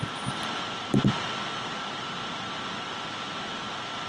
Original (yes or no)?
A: yes